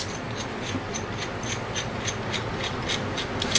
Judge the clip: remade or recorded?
recorded